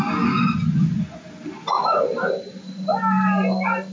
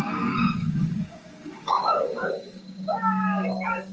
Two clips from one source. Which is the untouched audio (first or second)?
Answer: first